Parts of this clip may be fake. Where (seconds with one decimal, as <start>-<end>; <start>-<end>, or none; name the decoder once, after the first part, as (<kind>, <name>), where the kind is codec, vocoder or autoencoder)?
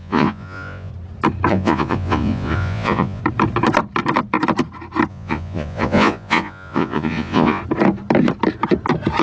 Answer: 0.0-0.9 (vocoder, Vocos); 1.5-3.2; 5.1-7.6